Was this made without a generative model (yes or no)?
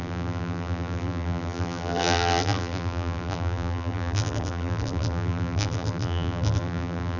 no